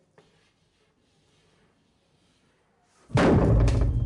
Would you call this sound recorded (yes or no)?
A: no